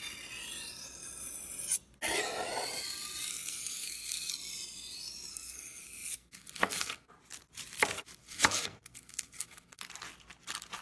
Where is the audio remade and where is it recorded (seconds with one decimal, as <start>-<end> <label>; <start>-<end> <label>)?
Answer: 0.0-3.3 recorded; 3.3-4.3 remade; 4.3-5.3 recorded; 5.3-7.1 remade; 7.1-8.2 recorded; 8.2-9.8 remade; 9.8-10.8 recorded